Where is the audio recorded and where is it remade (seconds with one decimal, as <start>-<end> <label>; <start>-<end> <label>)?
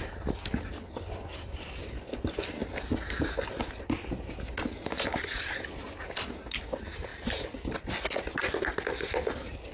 0.0-9.7 recorded